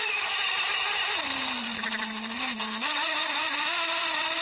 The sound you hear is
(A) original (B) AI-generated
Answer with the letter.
B